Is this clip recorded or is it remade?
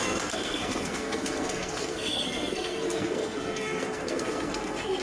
remade